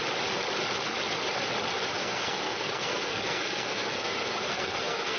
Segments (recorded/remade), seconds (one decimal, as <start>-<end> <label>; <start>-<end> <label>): 0.0-2.0 recorded; 2.0-5.2 remade

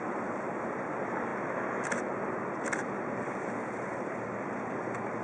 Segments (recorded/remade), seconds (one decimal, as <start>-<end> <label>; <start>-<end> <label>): 0.0-5.2 recorded

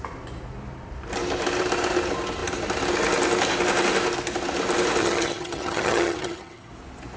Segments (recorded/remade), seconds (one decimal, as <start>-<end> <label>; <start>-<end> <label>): 0.0-5.0 recorded; 5.0-6.7 remade; 6.7-7.2 recorded

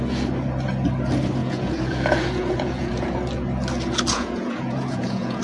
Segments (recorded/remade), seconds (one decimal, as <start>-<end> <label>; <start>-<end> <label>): 0.0-1.4 recorded; 1.4-3.1 remade; 3.1-4.1 recorded; 4.1-5.4 remade

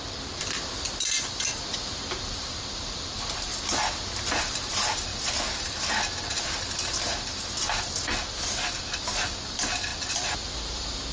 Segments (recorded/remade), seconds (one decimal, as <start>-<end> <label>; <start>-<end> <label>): 0.0-3.5 remade; 3.5-4.2 recorded; 4.2-5.1 remade; 5.1-8.3 recorded; 8.3-11.1 remade